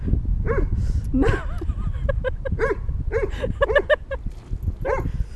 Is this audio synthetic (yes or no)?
no